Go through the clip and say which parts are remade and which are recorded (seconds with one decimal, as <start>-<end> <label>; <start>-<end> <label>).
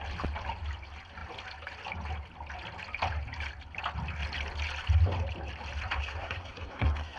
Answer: 0.0-6.0 recorded; 6.0-7.2 remade